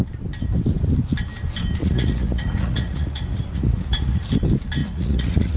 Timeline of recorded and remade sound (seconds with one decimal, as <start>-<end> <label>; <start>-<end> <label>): 0.0-1.8 recorded; 1.8-4.2 remade; 4.2-4.8 recorded; 4.8-5.6 remade